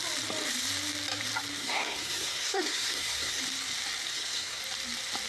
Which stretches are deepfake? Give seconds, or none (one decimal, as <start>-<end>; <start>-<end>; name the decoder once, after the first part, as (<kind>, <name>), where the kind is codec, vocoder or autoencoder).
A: 1.6-3.4 (codec, SNAC); 4.1-4.6